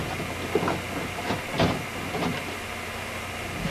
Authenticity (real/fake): real